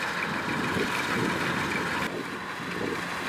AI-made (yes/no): no